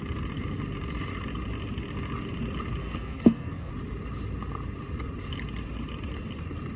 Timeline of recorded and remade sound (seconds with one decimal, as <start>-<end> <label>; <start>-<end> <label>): 0.0-2.8 recorded; 2.8-3.7 remade; 3.7-6.8 recorded